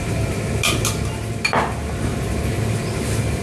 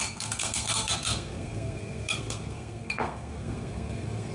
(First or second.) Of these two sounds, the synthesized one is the second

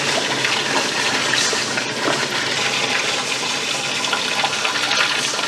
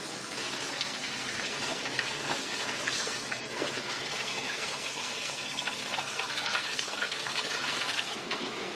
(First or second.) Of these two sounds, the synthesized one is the second